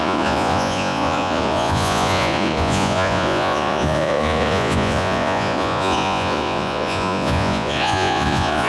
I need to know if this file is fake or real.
fake